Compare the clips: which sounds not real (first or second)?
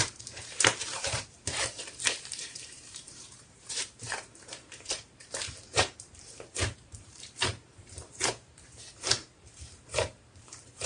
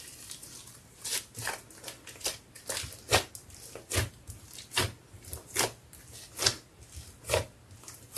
first